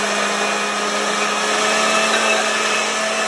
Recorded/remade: recorded